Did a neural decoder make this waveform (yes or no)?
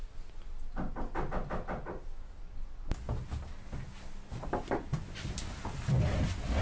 no